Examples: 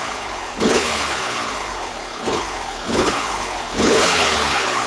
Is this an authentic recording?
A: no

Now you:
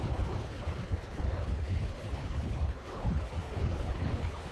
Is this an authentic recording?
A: no